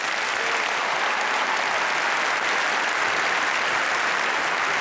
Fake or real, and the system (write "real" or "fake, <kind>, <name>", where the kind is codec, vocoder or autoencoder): real